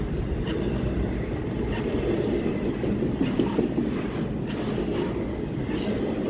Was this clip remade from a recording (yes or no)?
no